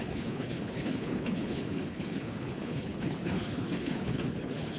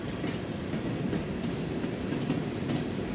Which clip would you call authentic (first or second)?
second